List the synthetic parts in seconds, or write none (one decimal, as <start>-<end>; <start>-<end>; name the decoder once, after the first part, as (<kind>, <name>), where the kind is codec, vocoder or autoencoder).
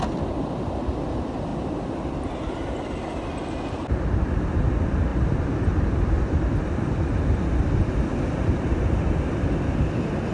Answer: 5.1-6.9 (vocoder, BigVGAN v2)